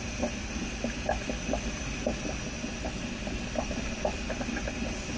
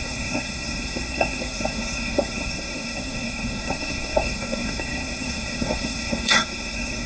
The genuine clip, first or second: first